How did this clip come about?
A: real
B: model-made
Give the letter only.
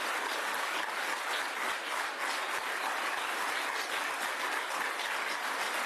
A